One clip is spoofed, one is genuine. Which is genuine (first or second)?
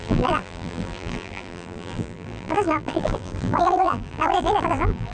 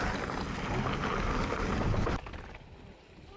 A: second